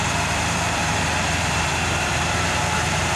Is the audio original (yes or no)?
no